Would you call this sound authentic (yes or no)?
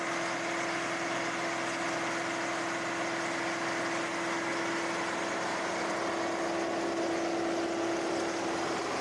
yes